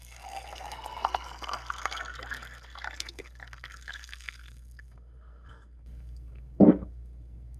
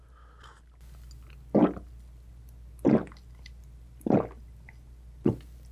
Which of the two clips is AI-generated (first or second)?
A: first